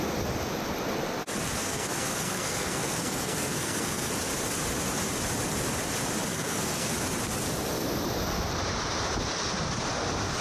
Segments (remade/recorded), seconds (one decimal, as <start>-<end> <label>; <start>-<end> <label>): 0.0-1.6 recorded; 1.6-4.1 remade; 4.1-6.3 recorded; 6.3-6.9 remade; 6.9-10.4 recorded